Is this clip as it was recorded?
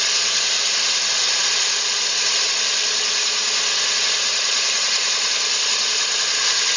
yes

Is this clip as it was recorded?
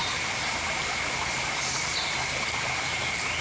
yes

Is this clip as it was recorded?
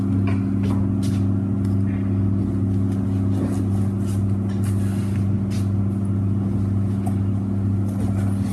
yes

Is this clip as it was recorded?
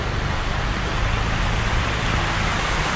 yes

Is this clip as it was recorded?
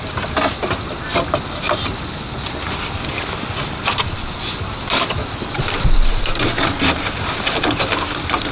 yes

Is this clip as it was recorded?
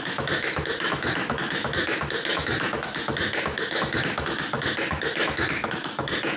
no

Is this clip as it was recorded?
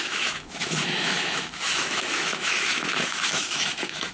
no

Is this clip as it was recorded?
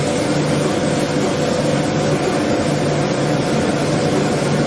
yes